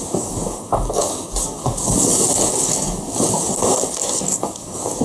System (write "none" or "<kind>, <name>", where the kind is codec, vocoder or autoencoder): codec, DAC